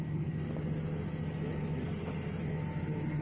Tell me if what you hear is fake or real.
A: real